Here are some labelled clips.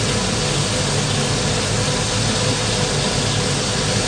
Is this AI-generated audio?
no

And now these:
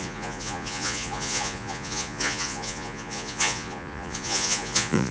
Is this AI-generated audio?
yes